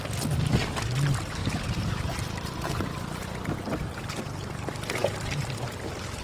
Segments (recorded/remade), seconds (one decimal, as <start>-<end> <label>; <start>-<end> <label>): 0.0-1.4 recorded; 1.4-3.3 remade; 3.3-6.2 recorded